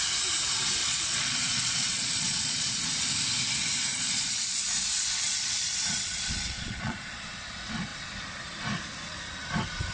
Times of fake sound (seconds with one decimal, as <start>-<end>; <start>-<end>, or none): 0.8-2.9; 3.9-7.3